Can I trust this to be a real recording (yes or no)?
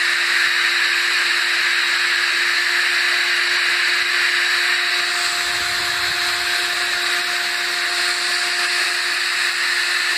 yes